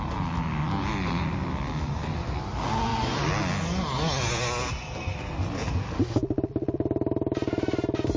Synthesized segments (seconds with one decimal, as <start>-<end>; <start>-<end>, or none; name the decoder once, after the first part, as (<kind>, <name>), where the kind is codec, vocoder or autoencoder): none